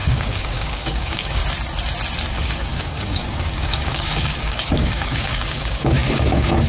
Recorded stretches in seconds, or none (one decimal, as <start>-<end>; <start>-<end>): 1.4-2.3